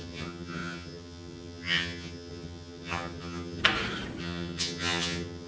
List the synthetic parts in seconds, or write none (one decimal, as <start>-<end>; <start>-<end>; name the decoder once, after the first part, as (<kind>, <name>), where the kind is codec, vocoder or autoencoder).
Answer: 0.0-3.6 (vocoder, HiFi-GAN); 4.2-5.5